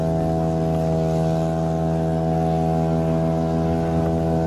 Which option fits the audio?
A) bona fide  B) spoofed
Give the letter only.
A